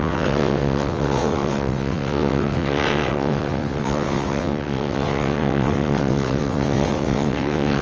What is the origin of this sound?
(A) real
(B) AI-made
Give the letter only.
B